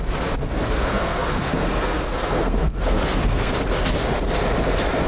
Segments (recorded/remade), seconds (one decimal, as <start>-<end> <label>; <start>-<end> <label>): 0.0-0.4 recorded; 0.4-3.5 remade; 3.5-5.1 recorded